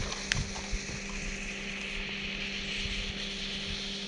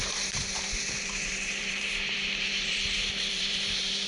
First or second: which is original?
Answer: first